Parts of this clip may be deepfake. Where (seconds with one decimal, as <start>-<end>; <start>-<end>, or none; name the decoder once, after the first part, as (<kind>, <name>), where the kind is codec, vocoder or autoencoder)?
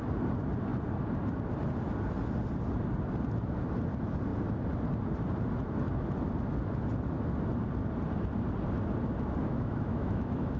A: 9.4-10.6 (autoencoder, DAC-VAE)